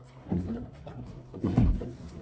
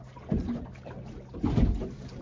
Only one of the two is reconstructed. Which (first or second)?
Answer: first